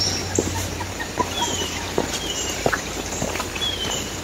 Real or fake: fake